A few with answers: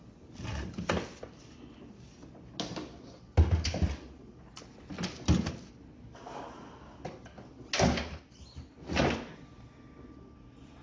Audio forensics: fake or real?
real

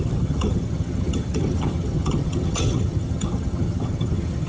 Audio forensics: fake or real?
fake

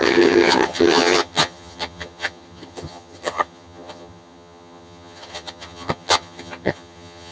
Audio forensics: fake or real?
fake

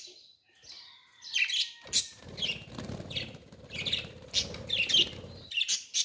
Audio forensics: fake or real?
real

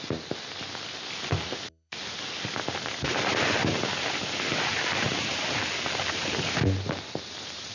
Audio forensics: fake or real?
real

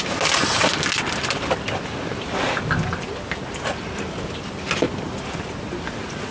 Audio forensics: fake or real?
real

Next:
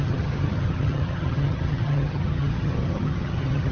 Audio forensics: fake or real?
fake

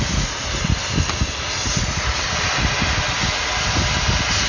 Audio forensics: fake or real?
real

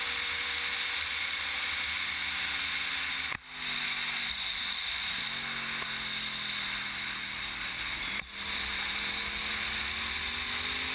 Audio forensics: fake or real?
real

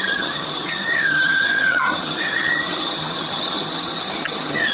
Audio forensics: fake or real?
fake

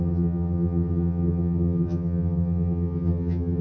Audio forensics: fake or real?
fake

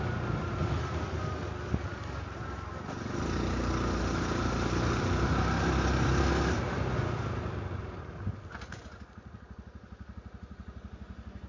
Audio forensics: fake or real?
real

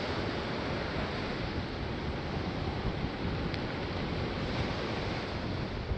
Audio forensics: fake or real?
real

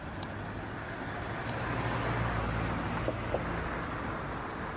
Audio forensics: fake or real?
real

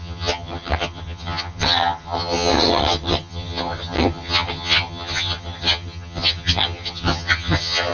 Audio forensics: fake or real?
fake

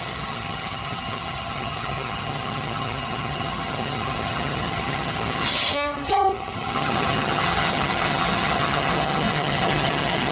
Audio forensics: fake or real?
fake